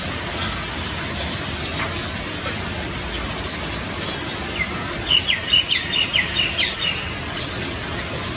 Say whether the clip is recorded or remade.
recorded